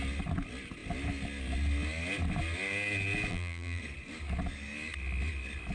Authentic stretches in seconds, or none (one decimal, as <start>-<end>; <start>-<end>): 0.0-3.3; 3.8-5.7